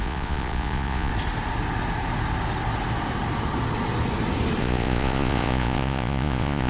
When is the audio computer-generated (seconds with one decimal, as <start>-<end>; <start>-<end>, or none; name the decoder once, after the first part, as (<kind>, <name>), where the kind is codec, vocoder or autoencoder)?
0.0-1.1 (vocoder, Vocos); 4.6-6.7